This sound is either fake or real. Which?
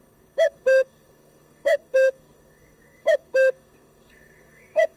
fake